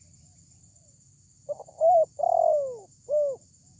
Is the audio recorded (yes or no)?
yes